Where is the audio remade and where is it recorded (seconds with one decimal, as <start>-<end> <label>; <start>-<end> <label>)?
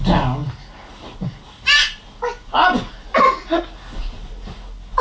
0.0-5.0 recorded